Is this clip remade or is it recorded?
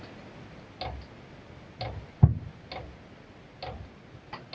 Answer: recorded